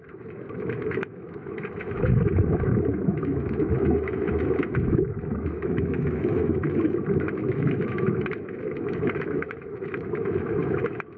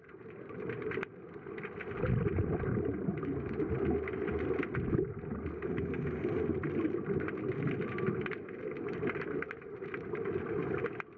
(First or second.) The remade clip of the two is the first